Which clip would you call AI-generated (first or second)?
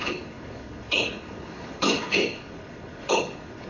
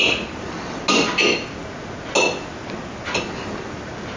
first